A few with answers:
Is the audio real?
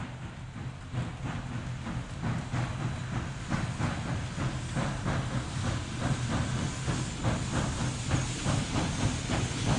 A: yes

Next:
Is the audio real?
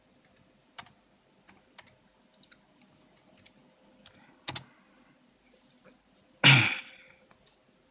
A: yes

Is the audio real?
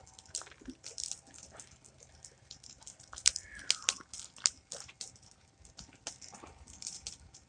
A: yes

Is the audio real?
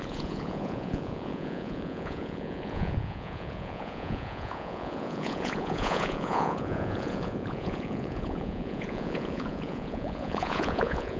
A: no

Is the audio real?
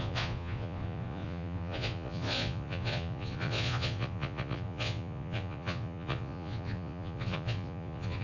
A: no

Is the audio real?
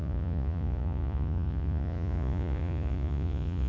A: no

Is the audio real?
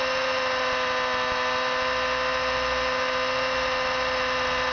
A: yes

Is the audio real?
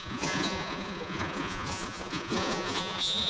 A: no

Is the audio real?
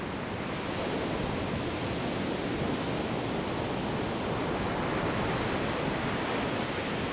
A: yes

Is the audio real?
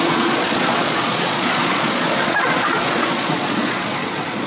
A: no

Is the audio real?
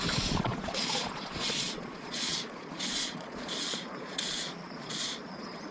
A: no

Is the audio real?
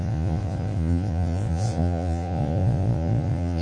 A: no